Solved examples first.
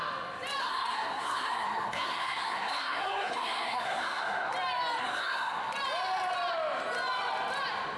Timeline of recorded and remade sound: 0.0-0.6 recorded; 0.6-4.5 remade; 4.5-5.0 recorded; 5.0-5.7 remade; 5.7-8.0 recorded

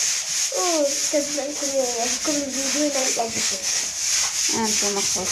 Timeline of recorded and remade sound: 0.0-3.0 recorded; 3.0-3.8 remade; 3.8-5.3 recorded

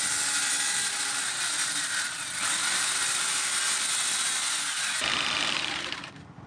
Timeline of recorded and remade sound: 0.0-6.5 recorded

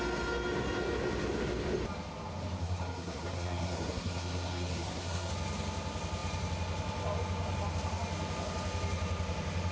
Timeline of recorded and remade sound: 0.0-2.6 recorded; 2.6-5.3 remade; 5.3-9.7 recorded

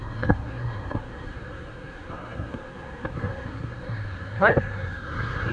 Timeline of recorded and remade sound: 0.0-5.5 remade

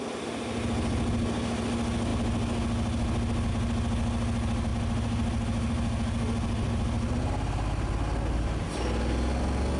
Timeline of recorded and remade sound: 0.0-9.8 recorded

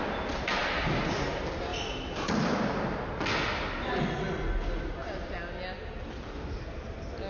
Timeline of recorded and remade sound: 0.0-7.3 recorded